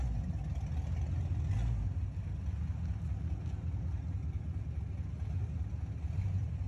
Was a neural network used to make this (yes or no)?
no